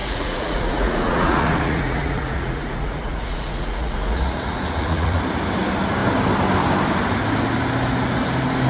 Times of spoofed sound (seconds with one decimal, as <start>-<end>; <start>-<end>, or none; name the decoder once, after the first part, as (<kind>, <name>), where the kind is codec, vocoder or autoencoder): 0.0-5.2 (vocoder, Vocos)